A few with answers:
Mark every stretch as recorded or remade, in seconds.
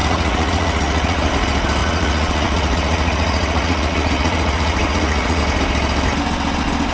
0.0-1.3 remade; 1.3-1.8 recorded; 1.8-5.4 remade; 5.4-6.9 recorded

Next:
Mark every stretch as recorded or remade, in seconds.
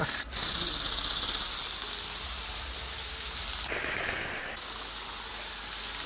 0.0-6.1 recorded